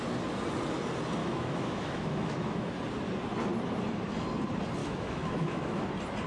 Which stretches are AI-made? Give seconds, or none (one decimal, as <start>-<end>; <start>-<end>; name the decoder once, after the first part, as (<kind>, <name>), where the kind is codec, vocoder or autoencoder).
1.2-2.7 (autoencoder, DAC-VAE); 4.8-5.8